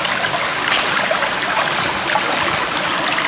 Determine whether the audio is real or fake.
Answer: real